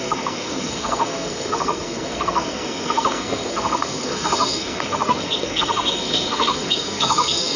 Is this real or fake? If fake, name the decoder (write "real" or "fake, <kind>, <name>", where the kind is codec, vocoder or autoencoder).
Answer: fake, codec, SNAC